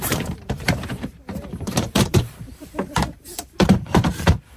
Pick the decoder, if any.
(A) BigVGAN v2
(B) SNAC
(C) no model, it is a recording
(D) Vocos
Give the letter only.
A